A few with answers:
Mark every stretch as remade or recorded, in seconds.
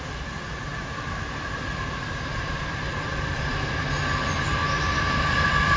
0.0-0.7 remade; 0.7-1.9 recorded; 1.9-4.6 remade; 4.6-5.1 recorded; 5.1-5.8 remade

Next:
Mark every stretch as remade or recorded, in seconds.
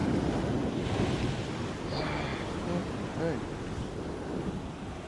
0.0-5.1 recorded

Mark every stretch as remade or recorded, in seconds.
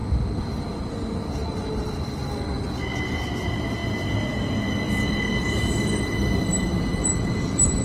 0.0-6.9 recorded; 6.9-7.8 remade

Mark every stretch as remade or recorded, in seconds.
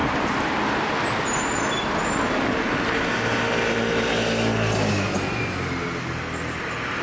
0.0-7.0 recorded